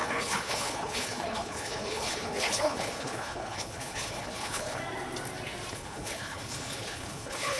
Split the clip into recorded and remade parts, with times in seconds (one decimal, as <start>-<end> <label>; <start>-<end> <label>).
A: 0.0-4.8 remade; 4.8-5.7 recorded; 5.7-7.6 remade